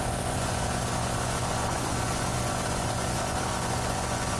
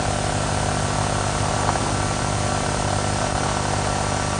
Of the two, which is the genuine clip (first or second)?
second